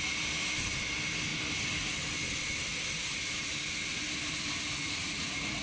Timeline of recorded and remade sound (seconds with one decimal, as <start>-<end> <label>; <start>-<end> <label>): 0.0-4.8 recorded; 4.8-5.6 remade